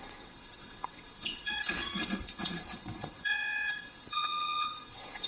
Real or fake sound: fake